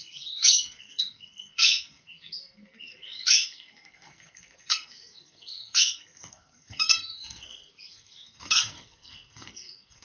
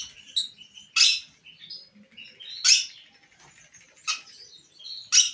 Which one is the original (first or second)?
second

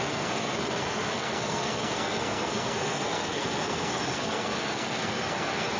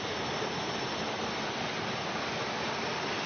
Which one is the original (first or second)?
second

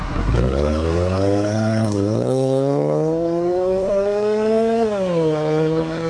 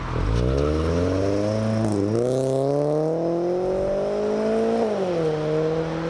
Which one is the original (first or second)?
second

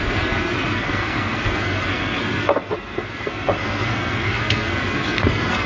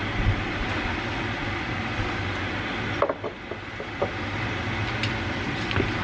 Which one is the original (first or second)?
second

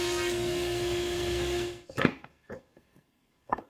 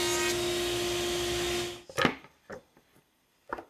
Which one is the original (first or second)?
second